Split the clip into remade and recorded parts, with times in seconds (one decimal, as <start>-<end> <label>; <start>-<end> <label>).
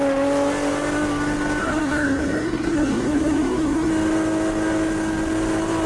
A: 0.0-1.6 recorded; 1.6-3.9 remade; 3.9-5.9 recorded